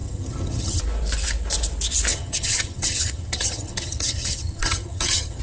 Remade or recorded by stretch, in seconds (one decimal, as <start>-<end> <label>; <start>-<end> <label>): 0.0-0.8 remade; 0.8-2.1 recorded; 2.1-5.4 remade

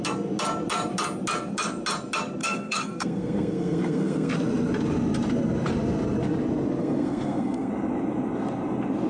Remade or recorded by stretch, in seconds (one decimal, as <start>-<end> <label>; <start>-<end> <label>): 0.0-2.4 recorded; 2.4-4.3 remade; 4.3-6.8 recorded; 6.8-7.7 remade; 7.7-9.1 recorded

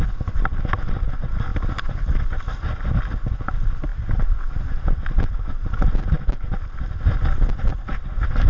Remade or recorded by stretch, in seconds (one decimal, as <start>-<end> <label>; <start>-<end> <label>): 0.0-8.5 recorded